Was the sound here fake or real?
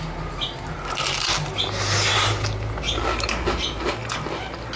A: real